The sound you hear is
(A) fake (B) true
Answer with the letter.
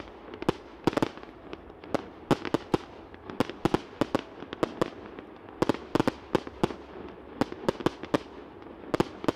B